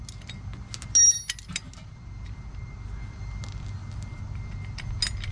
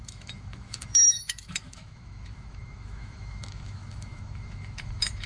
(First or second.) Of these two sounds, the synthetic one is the second